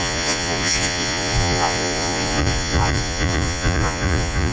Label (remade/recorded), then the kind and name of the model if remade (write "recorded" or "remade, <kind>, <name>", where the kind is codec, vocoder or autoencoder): remade, vocoder, Vocos